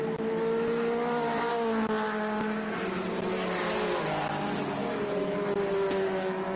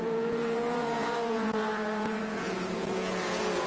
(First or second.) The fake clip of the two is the second